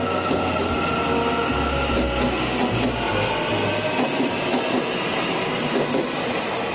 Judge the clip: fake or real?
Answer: real